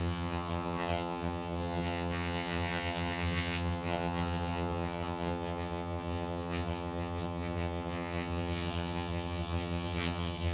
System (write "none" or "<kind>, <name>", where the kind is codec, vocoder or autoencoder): vocoder, HiFi-GAN